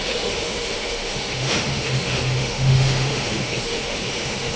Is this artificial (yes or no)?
yes